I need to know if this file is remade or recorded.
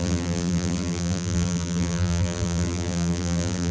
remade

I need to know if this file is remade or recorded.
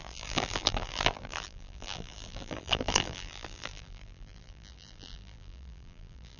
remade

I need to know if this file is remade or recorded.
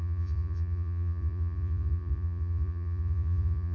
remade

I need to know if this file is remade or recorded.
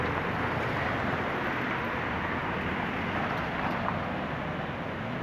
recorded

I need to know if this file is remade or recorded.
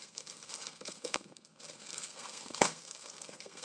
remade